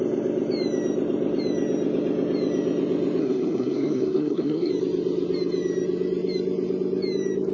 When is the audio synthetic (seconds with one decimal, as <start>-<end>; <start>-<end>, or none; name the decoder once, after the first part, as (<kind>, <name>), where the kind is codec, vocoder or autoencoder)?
3.2-4.7 (codec, SNAC)